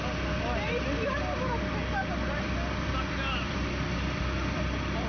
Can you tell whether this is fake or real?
real